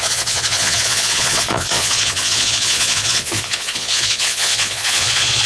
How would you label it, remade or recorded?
remade